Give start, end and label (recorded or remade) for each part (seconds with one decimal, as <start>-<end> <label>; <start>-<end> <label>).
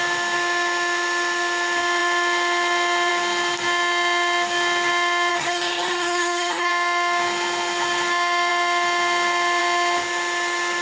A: 0.0-5.3 recorded; 5.3-6.7 remade; 6.7-10.8 recorded